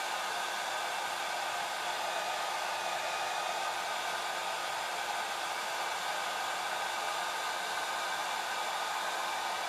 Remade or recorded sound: recorded